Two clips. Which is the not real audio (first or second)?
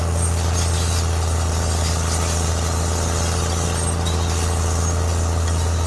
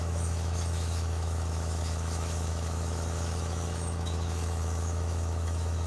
second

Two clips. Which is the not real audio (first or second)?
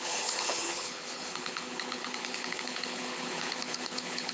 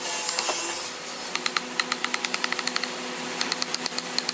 first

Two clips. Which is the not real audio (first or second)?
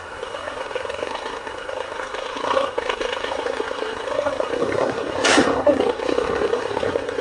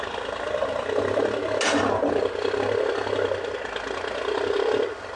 first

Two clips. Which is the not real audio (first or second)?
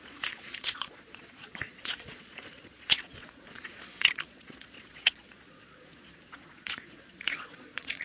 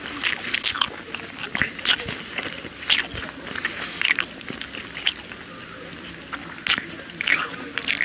first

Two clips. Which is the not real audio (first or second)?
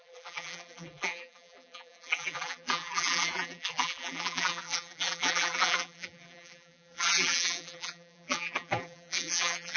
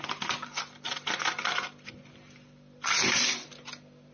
first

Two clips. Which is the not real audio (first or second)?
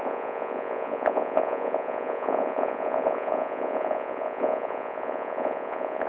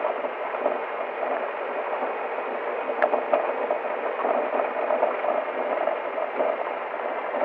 first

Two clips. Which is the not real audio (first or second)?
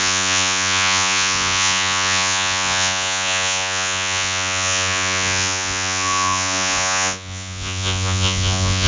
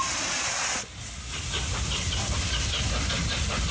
first